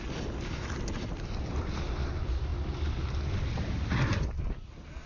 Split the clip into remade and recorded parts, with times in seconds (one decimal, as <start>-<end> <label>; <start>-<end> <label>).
0.0-5.1 recorded